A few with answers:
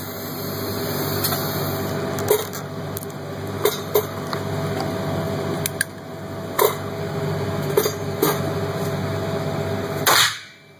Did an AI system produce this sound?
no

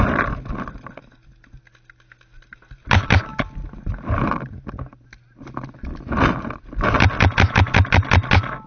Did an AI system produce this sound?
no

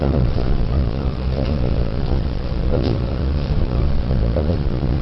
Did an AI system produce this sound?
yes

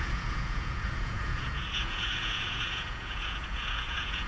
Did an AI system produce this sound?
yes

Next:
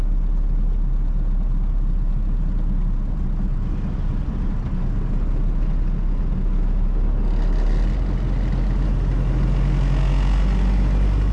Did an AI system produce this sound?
no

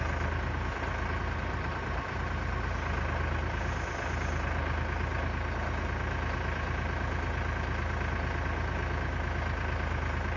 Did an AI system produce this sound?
no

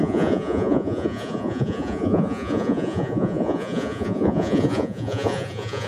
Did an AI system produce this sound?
yes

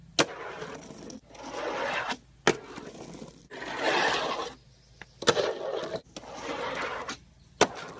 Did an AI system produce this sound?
no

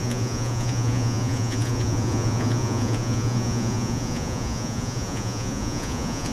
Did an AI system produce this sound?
yes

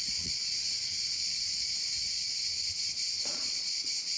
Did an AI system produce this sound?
yes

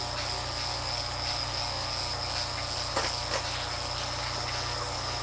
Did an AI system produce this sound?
no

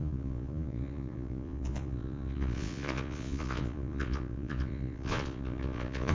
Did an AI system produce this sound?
yes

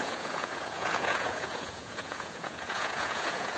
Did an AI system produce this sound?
yes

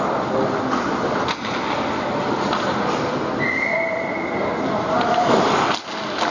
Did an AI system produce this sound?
no